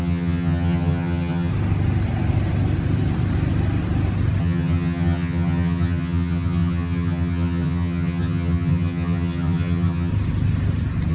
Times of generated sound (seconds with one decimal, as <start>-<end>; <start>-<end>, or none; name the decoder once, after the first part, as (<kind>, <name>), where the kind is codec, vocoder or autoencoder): 0.0-1.5 (vocoder, HiFi-GAN); 4.4-10.1